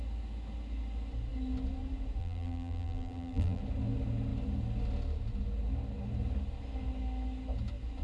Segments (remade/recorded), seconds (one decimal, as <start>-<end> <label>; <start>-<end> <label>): 0.0-2.2 recorded; 2.2-3.6 remade; 3.6-8.0 recorded